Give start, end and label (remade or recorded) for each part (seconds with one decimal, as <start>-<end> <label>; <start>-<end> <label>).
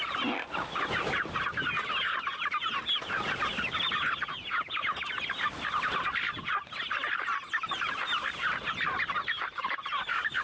0.0-10.4 recorded